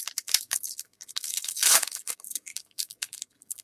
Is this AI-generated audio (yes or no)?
yes